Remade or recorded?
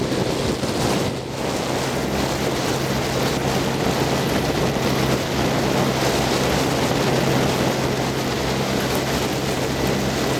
recorded